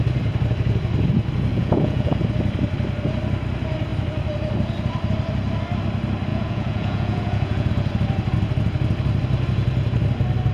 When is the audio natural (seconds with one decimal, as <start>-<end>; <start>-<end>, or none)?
0.0-1.5; 2.2-6.3; 7.7-10.5